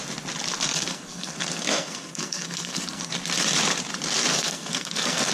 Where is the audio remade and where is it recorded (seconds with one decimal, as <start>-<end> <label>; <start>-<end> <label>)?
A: 0.0-0.7 recorded; 0.7-3.1 remade; 3.1-4.3 recorded; 4.3-5.3 remade